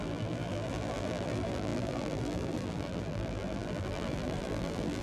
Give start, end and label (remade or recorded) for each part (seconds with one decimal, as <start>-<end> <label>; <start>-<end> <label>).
0.0-5.0 remade